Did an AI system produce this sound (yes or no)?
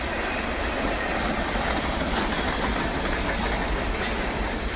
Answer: no